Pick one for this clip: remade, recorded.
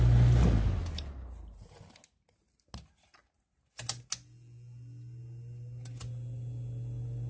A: recorded